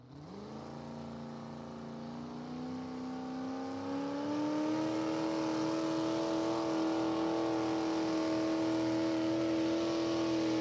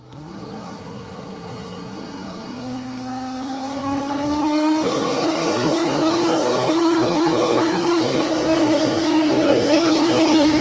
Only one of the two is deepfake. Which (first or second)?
second